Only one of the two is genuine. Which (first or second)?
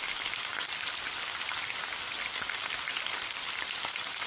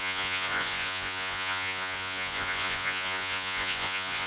first